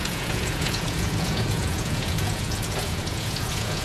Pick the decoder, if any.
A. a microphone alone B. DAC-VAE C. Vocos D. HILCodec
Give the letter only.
C